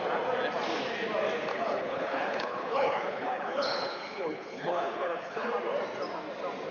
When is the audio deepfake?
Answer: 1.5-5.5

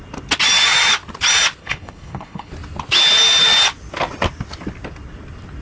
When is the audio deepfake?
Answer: 1.6-2.5

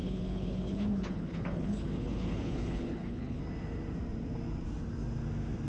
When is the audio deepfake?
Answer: 0.0-3.4

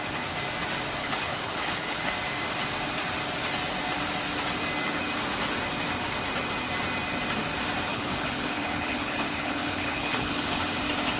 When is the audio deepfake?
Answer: 1.0-2.1; 7.9-10.6

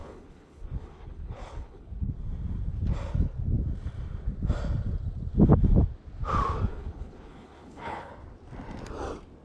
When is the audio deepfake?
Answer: 0.0-2.1; 6.7-8.1

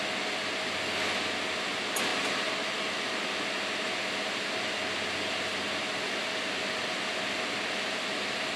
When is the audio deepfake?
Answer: none